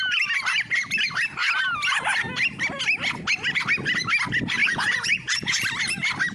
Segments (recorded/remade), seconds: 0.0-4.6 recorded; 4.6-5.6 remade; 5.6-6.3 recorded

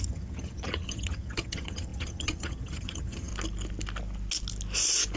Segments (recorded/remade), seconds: 0.0-3.3 remade; 3.3-5.2 recorded

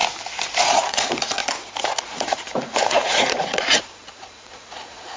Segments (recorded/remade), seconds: 0.0-0.6 recorded; 0.6-1.4 remade; 1.4-1.9 recorded; 1.9-5.2 remade